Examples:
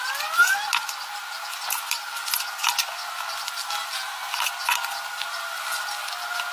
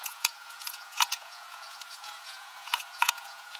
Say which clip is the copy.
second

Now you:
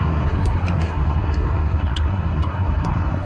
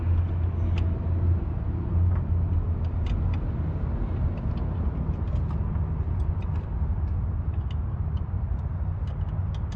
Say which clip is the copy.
first